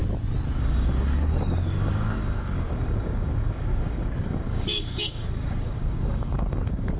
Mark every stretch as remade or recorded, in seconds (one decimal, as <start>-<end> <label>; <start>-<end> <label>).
0.0-0.6 recorded; 0.6-7.0 remade